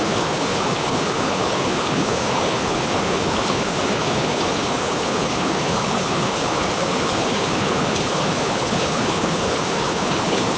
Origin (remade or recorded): remade